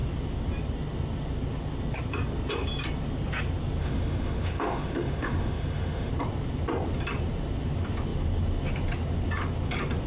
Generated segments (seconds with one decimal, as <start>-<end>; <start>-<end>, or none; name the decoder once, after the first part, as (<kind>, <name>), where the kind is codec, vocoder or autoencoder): 3.8-6.1 (autoencoder, DAC-VAE)

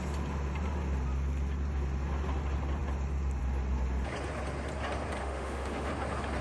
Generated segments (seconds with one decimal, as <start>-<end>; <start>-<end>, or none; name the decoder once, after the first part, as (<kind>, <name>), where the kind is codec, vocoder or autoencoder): 5.2-5.9 (autoencoder, DAC-VAE)